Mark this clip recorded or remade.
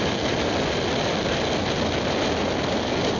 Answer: recorded